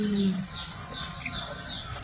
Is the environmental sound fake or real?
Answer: fake